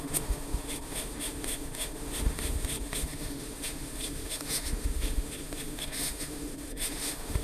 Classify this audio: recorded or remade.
remade